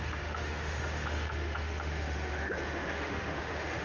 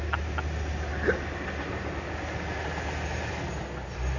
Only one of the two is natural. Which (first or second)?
second